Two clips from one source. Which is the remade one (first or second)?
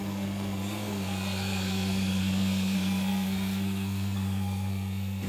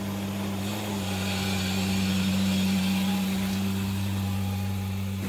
first